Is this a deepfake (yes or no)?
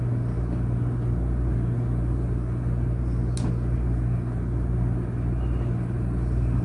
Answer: no